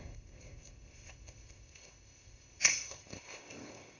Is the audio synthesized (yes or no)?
yes